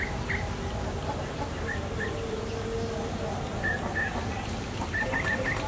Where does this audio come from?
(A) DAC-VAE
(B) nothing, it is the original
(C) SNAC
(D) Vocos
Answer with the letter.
B